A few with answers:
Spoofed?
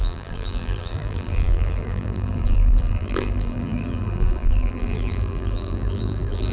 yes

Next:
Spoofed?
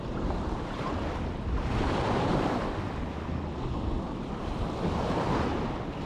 no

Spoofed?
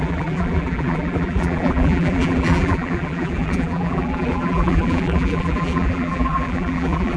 yes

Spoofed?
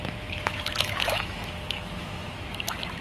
yes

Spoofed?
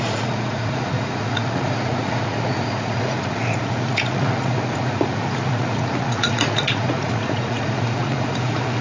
yes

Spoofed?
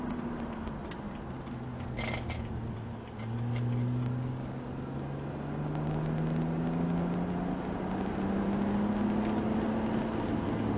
no